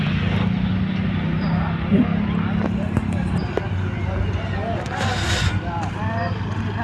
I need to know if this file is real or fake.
real